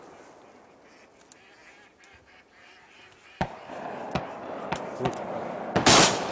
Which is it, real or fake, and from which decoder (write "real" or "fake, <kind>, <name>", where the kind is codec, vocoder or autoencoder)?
real